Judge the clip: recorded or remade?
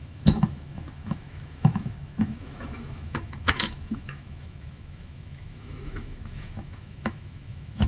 remade